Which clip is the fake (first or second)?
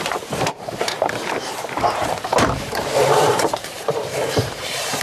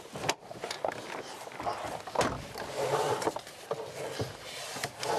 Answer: first